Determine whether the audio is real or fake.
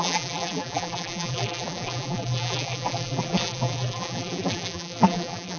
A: fake